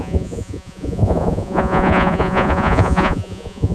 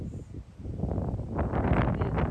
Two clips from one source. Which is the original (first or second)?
second